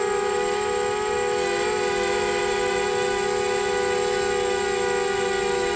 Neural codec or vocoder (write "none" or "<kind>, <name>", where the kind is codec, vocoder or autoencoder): none